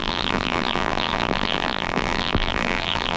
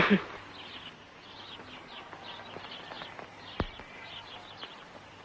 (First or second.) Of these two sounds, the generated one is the first